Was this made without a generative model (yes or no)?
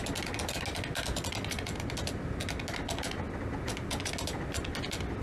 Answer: yes